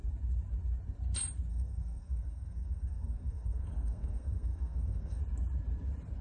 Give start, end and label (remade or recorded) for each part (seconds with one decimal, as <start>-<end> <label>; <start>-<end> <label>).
0.0-1.5 recorded; 1.5-5.2 remade; 5.2-6.2 recorded